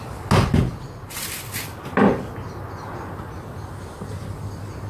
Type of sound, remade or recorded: recorded